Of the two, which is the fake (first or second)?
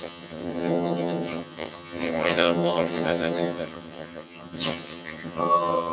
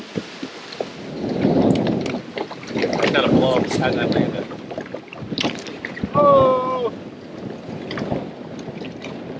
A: first